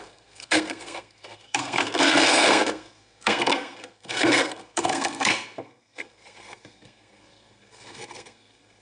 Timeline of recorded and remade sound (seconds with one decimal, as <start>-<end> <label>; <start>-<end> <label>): 0.0-8.8 remade